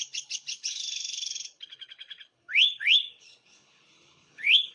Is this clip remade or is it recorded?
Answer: remade